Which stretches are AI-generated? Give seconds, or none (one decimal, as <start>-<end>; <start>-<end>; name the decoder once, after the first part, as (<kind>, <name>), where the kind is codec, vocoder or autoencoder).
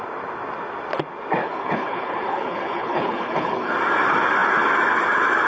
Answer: 1.4-3.7 (codec, HILCodec)